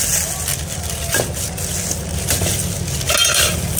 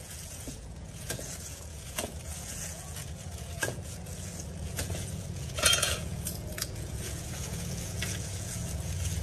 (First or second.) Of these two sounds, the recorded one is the first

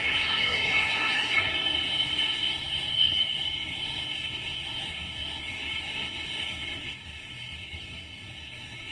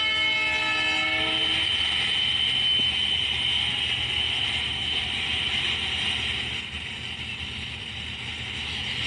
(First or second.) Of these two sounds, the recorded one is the second